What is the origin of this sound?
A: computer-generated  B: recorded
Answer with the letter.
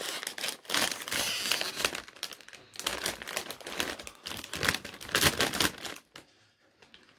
B